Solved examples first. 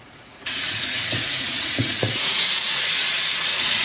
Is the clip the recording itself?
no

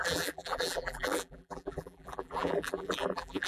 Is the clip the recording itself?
no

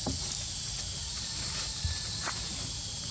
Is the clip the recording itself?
yes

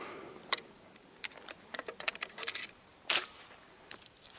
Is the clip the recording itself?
no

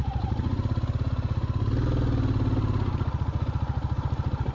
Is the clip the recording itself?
yes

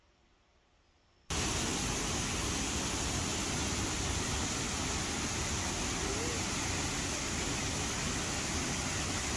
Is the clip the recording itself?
yes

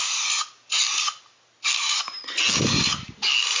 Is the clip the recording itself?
yes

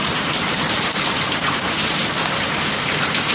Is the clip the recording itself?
no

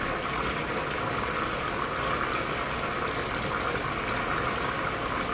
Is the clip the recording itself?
yes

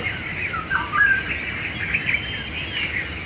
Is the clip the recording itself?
yes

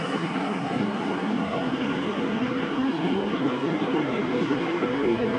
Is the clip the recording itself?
no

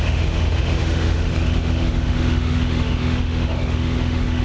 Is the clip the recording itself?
no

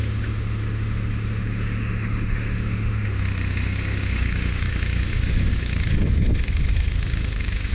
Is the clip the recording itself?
no